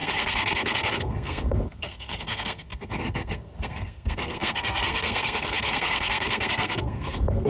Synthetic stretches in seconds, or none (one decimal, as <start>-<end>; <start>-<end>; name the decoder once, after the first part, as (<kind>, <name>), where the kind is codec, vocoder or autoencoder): 0.0-7.5 (codec, SNAC)